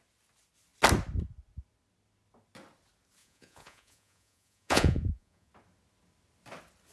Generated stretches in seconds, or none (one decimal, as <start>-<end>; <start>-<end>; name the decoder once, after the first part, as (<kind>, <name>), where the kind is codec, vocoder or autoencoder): 3.2-5.5 (vocoder, Vocos)